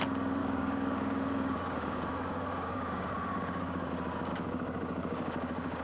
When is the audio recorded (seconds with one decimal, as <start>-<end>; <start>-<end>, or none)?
0.0-0.4; 3.9-4.3